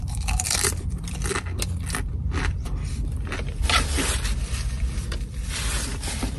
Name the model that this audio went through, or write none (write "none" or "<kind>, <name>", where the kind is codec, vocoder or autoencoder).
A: vocoder, BigVGAN v2